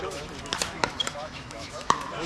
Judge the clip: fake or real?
fake